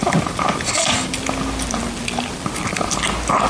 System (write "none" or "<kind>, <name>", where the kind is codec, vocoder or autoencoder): none